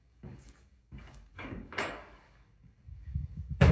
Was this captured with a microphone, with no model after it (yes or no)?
no